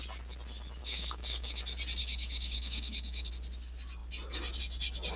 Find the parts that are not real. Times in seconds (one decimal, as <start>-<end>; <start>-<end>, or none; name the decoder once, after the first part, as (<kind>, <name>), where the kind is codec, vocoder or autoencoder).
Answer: 0.8-1.6 (codec, DAC); 2.0-3.3